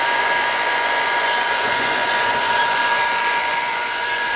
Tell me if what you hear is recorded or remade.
remade